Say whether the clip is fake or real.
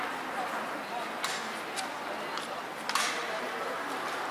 real